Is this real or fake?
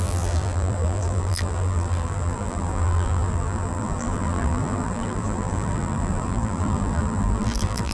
fake